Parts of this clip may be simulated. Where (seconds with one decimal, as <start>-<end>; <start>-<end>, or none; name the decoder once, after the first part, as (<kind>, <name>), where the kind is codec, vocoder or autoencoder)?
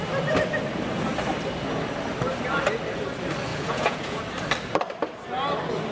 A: 3.5-4.2 (vocoder, Vocos)